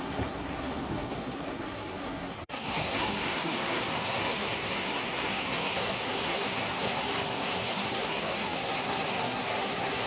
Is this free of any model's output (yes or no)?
no